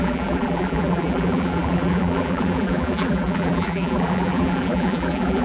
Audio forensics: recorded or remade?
remade